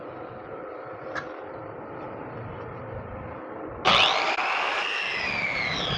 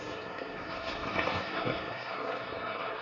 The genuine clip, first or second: first